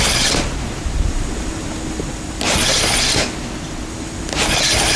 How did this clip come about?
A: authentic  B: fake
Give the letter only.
A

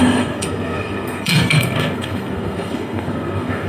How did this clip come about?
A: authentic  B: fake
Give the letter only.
B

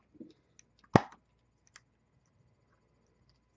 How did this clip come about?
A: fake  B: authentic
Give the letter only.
B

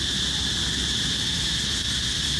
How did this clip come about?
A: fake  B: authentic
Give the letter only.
B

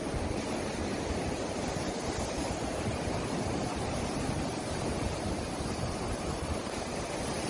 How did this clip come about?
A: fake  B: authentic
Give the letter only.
B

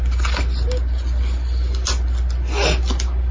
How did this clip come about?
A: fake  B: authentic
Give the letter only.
B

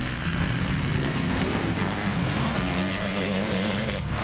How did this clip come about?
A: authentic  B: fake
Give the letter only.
B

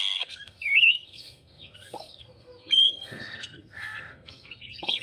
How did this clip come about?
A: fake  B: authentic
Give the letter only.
A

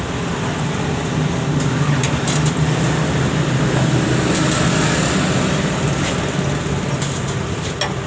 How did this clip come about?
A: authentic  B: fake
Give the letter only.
A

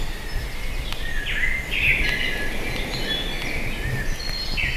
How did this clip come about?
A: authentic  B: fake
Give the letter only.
A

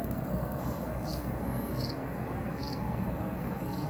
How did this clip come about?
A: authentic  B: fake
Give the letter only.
B